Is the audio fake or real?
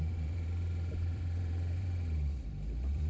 fake